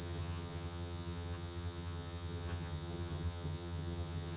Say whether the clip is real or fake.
fake